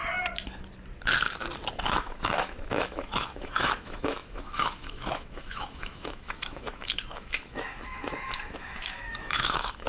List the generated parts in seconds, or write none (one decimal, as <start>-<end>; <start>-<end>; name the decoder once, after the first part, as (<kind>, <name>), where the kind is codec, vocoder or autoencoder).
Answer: 1.7-9.9 (autoencoder, DAC-VAE)